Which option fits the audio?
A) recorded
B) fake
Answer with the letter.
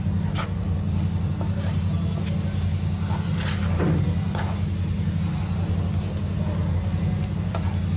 A